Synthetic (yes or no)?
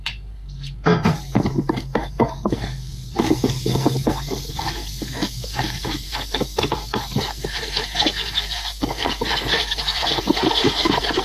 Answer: yes